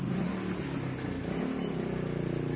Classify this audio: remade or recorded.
recorded